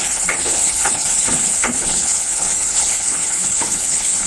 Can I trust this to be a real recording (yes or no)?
no